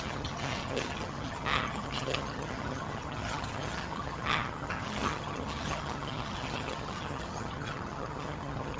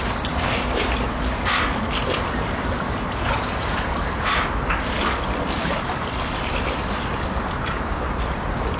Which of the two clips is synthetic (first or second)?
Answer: first